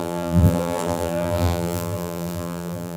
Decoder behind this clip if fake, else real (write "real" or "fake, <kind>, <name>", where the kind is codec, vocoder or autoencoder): fake, vocoder, BigVGAN v2